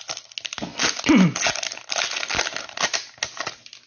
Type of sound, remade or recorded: recorded